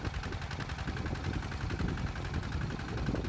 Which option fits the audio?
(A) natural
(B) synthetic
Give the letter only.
A